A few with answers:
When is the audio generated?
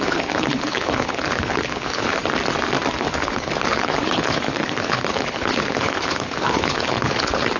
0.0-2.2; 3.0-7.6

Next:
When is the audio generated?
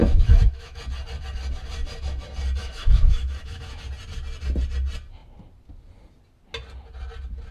0.0-0.8; 2.6-3.8